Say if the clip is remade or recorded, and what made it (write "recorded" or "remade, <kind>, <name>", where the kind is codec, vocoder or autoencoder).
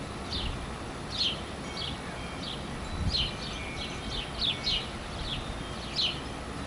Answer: recorded